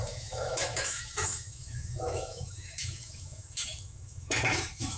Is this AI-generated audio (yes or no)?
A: yes